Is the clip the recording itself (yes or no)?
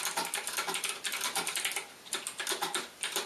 yes